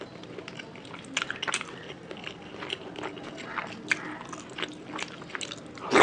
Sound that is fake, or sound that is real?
real